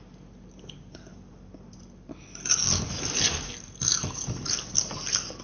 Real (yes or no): no